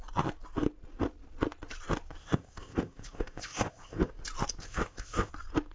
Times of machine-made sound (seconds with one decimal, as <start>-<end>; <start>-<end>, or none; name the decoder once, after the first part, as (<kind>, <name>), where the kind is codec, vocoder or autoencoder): 2.2-4.1 (codec, ZipCodec); 4.6-5.3

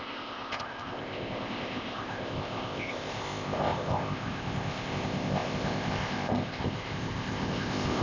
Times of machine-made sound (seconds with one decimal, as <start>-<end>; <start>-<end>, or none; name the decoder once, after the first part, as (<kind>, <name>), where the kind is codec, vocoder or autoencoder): 0.0-8.0 (codec, ZipCodec)

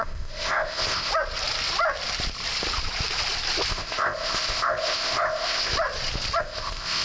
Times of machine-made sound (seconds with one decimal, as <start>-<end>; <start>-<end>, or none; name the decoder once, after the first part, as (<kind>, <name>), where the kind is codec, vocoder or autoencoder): 0.0-1.1 (codec, ZipCodec); 3.7-5.7; 6.4-7.0

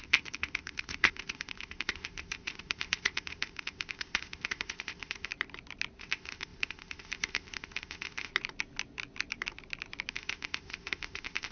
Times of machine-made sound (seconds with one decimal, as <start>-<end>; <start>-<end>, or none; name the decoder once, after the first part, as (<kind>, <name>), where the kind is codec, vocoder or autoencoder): 0.0-5.3 (codec, ZipCodec); 6.0-8.3; 10.1-11.5